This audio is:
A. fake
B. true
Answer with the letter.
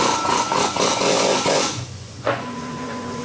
A